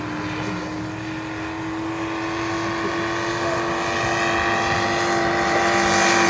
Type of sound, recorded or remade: recorded